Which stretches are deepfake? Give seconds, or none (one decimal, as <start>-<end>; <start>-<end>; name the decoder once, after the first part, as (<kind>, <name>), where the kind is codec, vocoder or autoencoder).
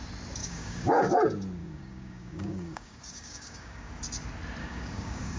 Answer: 0.4-1.1 (codec, DAC); 1.6-3.9; 4.6-5.4